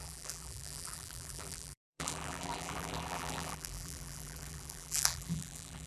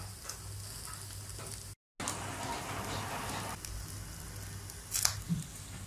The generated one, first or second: first